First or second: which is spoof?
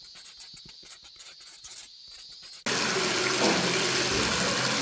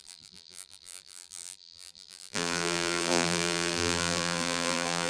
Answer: second